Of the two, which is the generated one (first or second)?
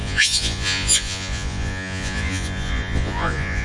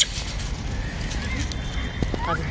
first